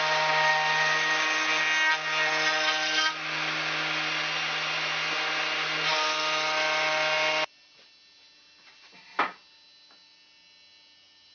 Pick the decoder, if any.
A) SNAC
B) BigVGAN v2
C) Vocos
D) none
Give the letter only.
D